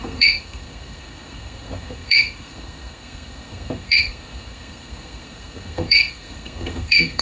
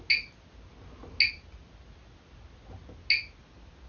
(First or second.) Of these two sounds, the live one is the second